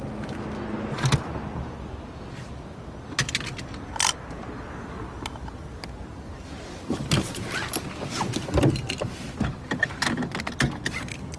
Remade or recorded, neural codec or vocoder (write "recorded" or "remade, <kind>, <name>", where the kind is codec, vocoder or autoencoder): recorded